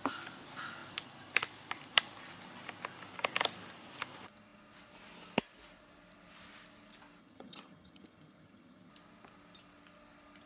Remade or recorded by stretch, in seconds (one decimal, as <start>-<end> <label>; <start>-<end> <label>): 0.0-7.2 recorded; 7.2-8.9 remade; 8.9-10.5 recorded